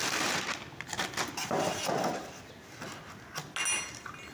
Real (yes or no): yes